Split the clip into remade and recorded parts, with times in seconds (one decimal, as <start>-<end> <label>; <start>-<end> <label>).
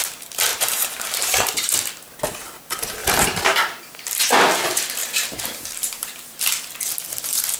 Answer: 0.0-0.5 recorded; 0.5-1.7 remade; 1.7-3.0 recorded; 3.0-4.3 remade; 4.3-5.0 recorded; 5.0-6.5 remade; 6.5-7.6 recorded